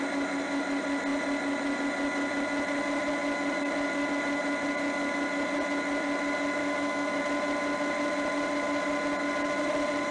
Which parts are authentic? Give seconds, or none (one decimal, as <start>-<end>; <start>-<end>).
0.0-6.6; 7.2-10.1

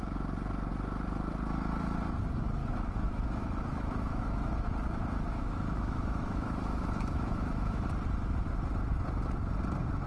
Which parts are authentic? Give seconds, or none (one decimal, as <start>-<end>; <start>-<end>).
0.0-2.6; 7.8-10.1

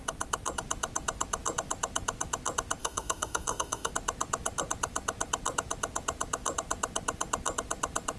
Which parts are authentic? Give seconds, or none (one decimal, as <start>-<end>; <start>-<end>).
0.0-2.8; 3.9-8.2